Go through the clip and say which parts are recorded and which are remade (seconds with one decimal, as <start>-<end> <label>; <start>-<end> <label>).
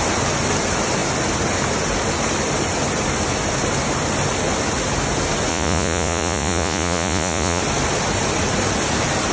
0.0-5.5 recorded; 5.5-7.6 remade; 7.6-9.3 recorded